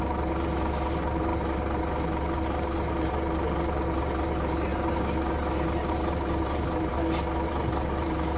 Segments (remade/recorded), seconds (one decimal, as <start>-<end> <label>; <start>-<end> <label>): 0.0-6.9 remade; 6.9-7.5 recorded; 7.5-8.4 remade

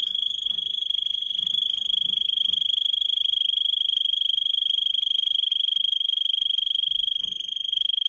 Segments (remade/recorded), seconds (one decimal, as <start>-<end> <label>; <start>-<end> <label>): 0.0-8.1 recorded

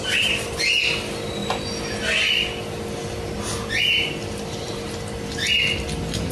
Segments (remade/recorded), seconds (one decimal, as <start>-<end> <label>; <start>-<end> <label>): 0.0-4.2 recorded; 4.2-4.9 remade; 4.9-6.3 recorded

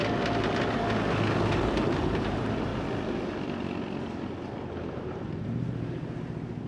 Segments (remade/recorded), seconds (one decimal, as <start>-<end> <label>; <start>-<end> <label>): 0.0-1.6 recorded; 1.6-2.7 remade; 2.7-4.9 recorded; 4.9-6.7 remade

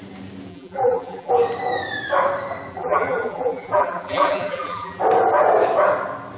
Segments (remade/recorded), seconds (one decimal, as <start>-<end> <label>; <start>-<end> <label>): 0.0-0.5 recorded; 0.5-1.3 remade; 1.3-2.7 recorded; 2.7-5.0 remade; 5.0-6.4 recorded

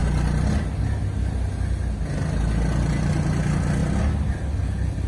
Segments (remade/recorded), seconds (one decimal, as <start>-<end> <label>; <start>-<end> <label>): 0.0-5.1 recorded